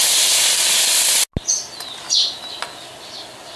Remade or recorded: recorded